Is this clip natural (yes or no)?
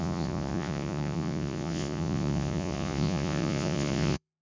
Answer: no